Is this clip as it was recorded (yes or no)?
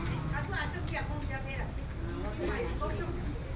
yes